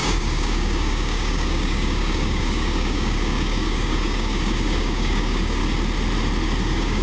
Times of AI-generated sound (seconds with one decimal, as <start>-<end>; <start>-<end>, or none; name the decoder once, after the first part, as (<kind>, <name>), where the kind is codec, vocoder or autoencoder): 0.0-5.6 (codec, DAC); 6.6-7.0